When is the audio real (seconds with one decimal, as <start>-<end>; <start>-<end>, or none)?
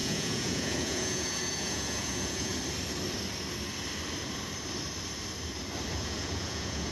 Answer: 2.5-5.9